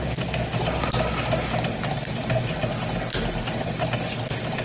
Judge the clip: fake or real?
real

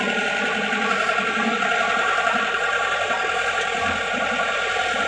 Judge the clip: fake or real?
fake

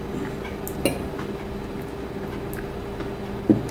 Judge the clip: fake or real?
real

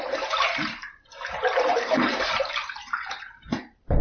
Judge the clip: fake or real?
fake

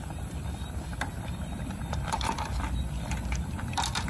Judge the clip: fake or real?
fake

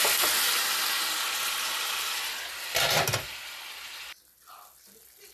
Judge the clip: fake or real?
real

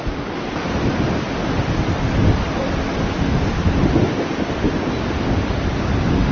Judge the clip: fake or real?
real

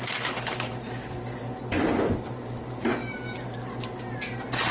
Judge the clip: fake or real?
real